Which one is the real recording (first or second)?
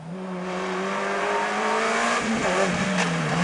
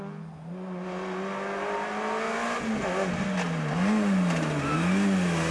second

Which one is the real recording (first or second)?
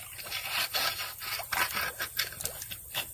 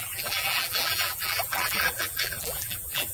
first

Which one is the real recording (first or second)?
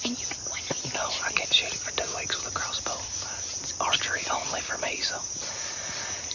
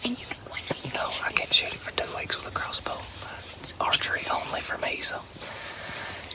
first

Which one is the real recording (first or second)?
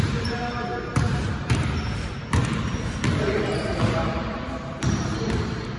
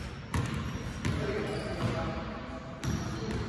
second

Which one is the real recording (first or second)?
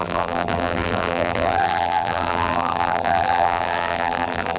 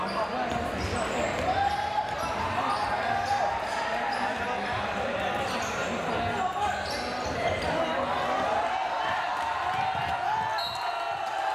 second